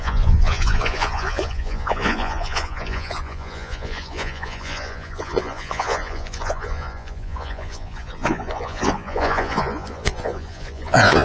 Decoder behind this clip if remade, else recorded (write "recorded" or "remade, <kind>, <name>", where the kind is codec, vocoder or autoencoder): remade, vocoder, Vocos